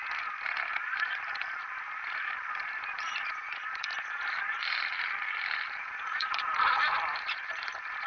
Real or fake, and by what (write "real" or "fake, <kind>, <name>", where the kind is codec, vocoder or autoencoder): fake, vocoder, BigVGAN v2